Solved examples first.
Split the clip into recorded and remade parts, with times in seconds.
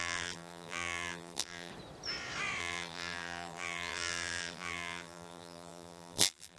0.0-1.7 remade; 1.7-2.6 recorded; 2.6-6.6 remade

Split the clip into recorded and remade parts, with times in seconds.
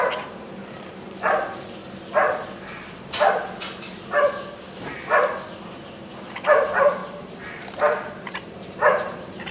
0.0-1.8 remade; 1.8-5.7 recorded; 5.7-7.0 remade; 7.0-7.6 recorded; 7.6-9.5 remade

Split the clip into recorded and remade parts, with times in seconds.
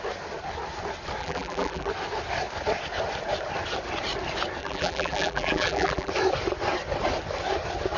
0.0-1.2 recorded; 1.2-1.9 remade; 1.9-4.6 recorded; 4.6-6.1 remade; 6.1-8.0 recorded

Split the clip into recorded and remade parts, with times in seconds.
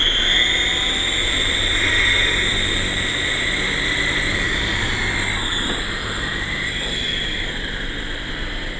0.0-1.2 recorded; 1.2-2.0 remade; 2.0-2.5 recorded; 2.5-4.9 remade; 4.9-6.0 recorded; 6.0-8.3 remade; 8.3-8.8 recorded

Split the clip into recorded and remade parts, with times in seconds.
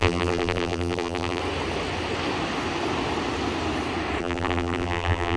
0.0-1.4 remade; 1.4-4.2 recorded; 4.2-5.4 remade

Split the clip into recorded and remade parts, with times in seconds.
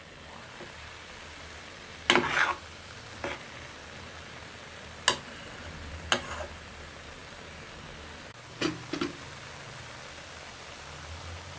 0.0-7.2 recorded; 7.2-8.2 remade; 8.2-11.6 recorded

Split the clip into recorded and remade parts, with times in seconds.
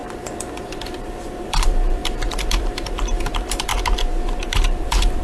0.0-3.7 remade; 3.7-4.4 recorded; 4.4-5.2 remade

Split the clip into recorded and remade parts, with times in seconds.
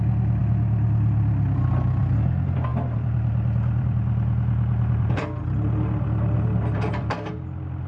0.0-2.7 recorded; 2.7-7.3 remade; 7.3-7.9 recorded